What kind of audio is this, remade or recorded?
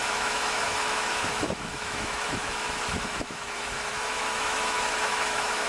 remade